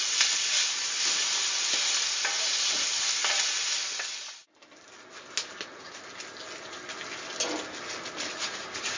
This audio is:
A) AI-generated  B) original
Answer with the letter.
B